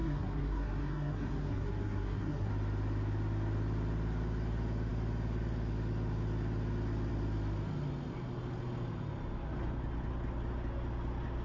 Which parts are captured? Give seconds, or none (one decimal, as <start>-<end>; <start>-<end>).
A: 2.5-11.4